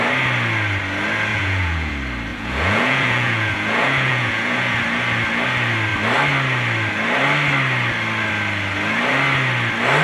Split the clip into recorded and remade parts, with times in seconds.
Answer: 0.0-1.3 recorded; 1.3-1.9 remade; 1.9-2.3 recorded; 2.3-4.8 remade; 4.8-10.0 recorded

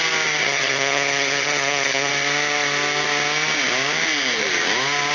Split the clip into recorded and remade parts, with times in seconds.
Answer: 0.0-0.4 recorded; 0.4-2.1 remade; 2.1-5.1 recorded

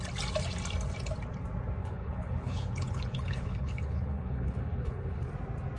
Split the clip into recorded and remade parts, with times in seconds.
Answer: 0.0-1.8 recorded; 1.8-5.3 remade; 5.3-5.8 recorded

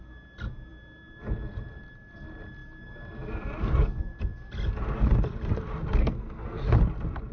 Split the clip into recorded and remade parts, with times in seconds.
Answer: 0.0-6.0 recorded; 6.0-6.6 remade; 6.6-7.3 recorded